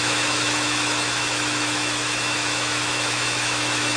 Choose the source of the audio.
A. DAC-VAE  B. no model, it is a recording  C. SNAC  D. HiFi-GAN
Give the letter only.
A